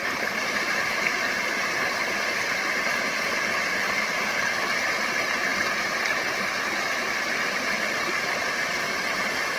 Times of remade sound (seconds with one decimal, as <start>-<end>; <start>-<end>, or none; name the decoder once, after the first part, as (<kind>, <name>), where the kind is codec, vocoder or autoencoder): none